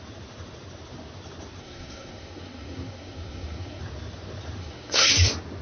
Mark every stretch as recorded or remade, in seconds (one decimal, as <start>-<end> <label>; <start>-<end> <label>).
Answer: 0.0-1.6 recorded; 1.6-3.8 remade; 3.8-4.6 recorded; 4.6-5.1 remade; 5.1-5.6 recorded